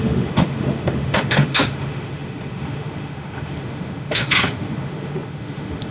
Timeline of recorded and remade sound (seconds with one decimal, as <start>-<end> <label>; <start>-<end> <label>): 0.0-5.9 remade